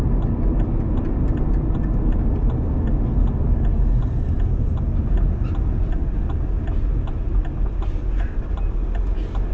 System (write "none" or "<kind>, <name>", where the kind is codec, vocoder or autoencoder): none